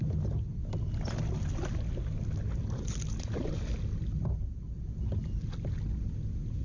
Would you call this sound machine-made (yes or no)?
no